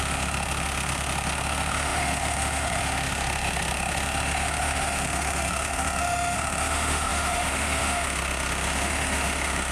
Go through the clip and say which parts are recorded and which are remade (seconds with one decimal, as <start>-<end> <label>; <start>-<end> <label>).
0.0-9.7 remade